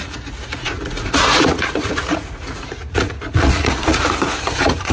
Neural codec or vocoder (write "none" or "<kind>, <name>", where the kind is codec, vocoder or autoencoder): vocoder, Vocos